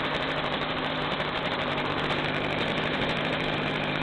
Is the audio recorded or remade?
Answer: remade